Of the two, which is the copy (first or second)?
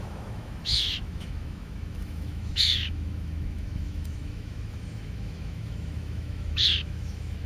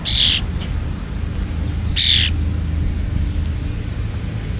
first